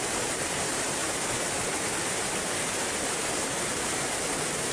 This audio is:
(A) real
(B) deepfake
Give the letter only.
B